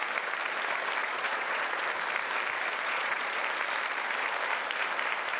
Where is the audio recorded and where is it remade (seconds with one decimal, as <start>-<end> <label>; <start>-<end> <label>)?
0.0-1.0 recorded; 1.0-1.8 remade; 1.8-2.8 recorded; 2.8-3.4 remade; 3.4-5.4 recorded